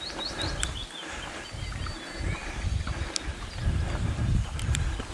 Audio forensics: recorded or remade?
recorded